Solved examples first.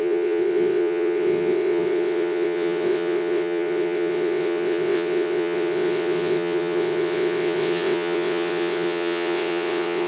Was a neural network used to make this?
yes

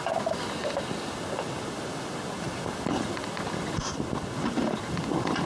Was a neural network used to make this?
no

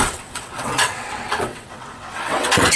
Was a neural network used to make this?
yes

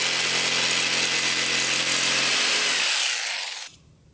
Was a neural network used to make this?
no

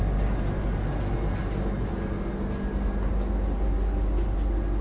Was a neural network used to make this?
no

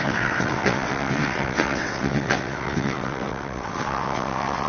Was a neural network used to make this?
yes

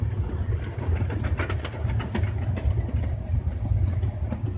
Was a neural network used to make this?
no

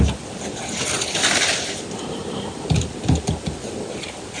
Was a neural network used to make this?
no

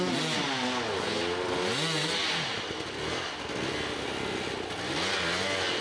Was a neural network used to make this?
no